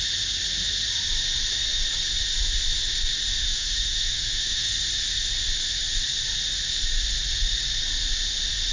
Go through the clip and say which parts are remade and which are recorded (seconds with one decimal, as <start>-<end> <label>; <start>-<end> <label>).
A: 0.0-3.4 recorded; 3.4-4.7 remade; 4.7-8.7 recorded